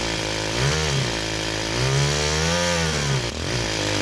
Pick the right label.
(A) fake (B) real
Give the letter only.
B